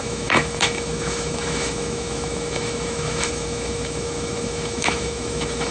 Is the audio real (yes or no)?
no